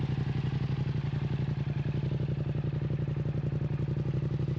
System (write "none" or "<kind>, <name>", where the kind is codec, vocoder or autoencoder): none